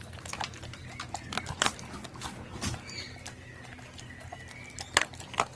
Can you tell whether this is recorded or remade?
recorded